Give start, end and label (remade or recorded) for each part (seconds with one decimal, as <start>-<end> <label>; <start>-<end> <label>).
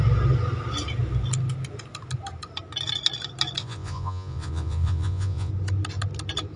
0.0-3.6 recorded; 3.6-5.5 remade; 5.5-6.6 recorded